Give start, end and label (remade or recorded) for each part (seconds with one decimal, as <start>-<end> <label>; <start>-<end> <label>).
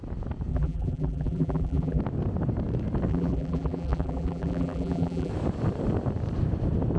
0.0-0.5 recorded; 0.5-2.0 remade; 2.0-3.1 recorded; 3.1-5.3 remade; 5.3-7.0 recorded